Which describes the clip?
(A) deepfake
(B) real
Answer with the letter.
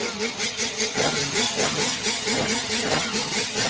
A